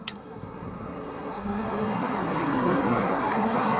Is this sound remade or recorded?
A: remade